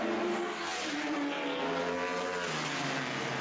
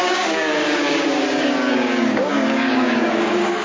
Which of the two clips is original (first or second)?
first